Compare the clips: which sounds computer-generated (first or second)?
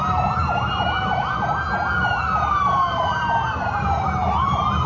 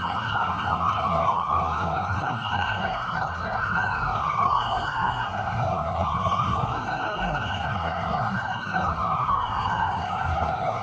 second